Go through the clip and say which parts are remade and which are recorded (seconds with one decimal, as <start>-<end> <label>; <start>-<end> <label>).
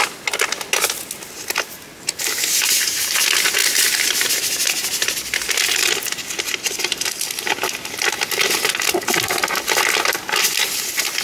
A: 0.0-11.2 recorded